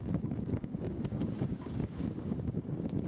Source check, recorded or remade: remade